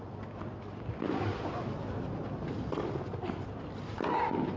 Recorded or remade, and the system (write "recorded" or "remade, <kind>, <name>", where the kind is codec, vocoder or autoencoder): recorded